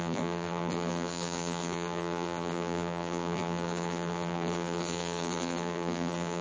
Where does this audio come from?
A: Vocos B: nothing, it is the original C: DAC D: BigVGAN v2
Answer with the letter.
D